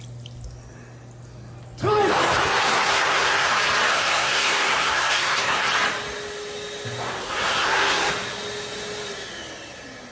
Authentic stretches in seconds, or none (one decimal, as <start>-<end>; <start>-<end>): 0.0-2.4; 3.5-3.9; 5.7-7.2; 8.1-10.1